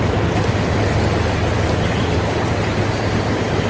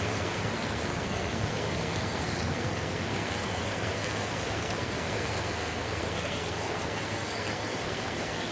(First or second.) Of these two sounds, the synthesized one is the second